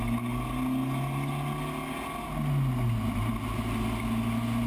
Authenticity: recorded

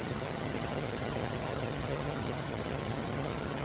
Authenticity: remade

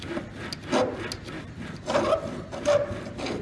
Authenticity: recorded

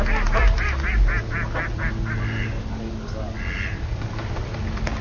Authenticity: recorded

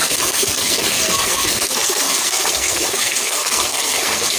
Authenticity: remade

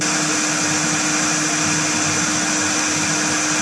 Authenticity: recorded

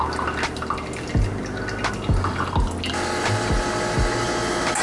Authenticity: recorded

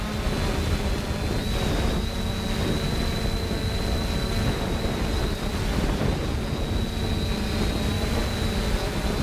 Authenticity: recorded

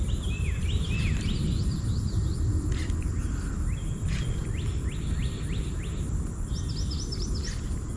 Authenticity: recorded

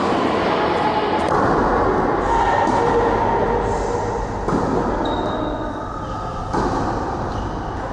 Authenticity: recorded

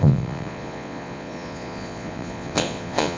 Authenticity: remade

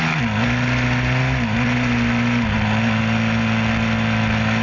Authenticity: recorded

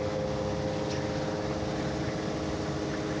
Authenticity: recorded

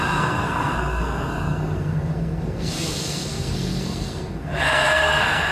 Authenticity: remade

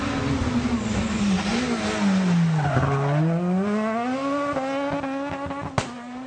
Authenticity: recorded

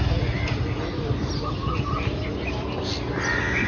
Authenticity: recorded